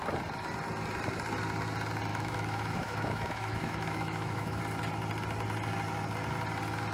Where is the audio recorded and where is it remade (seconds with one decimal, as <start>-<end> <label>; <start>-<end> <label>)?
0.0-2.1 recorded; 2.1-4.6 remade; 4.6-6.9 recorded